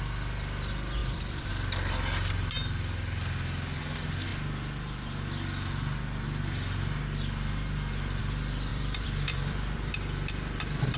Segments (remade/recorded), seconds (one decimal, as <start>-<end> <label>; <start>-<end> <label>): 0.0-1.0 recorded; 1.0-1.5 remade; 1.5-8.7 recorded; 8.7-9.9 remade; 9.9-11.0 recorded